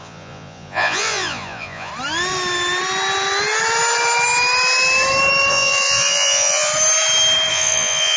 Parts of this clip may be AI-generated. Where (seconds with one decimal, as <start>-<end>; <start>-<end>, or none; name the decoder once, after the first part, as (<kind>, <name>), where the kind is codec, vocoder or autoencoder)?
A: 0.0-1.9 (vocoder, Vocos); 5.5-6.7; 7.5-8.2